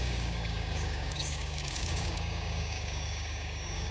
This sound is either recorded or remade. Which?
remade